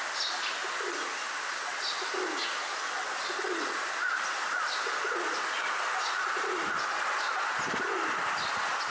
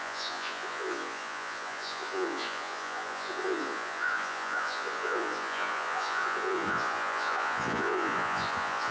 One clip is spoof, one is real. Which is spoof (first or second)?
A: second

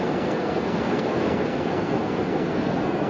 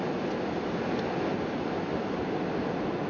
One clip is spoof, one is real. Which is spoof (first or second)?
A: first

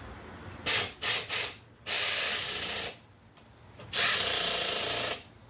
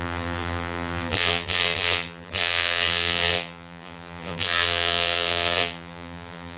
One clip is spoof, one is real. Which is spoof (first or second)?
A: second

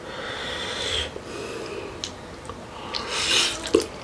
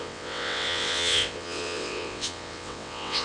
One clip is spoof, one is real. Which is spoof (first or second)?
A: second